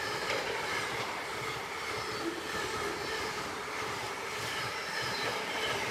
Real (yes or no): yes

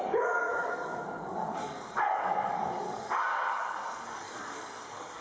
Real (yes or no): no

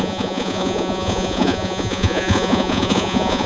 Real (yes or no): no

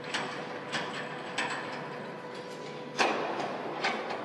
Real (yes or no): yes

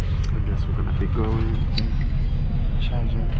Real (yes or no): yes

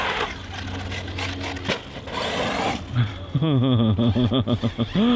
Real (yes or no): yes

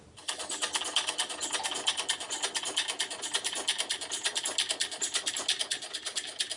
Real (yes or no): yes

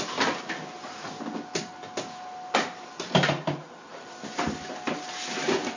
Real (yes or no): yes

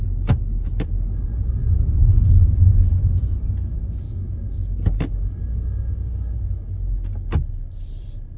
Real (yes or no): yes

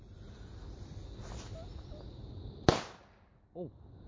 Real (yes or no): yes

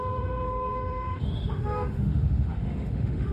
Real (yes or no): no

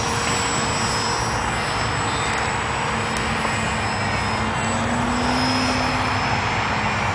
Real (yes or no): yes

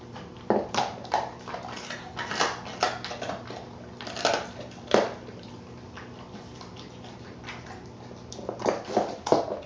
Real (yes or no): yes